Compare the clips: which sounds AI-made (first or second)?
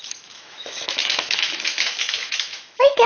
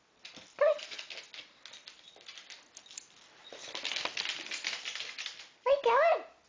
first